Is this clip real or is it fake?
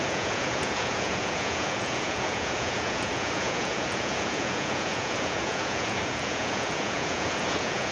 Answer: fake